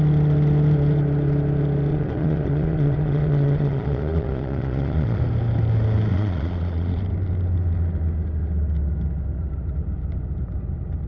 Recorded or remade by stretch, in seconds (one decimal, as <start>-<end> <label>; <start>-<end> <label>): 0.0-1.9 recorded; 1.9-5.2 remade; 5.2-6.1 recorded; 6.1-7.0 remade; 7.0-11.1 recorded